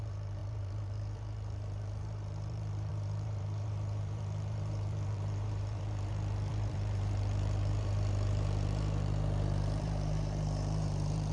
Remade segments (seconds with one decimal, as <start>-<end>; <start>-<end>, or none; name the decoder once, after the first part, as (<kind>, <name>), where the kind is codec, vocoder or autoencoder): 0.0-11.3 (vocoder, BigVGAN v2)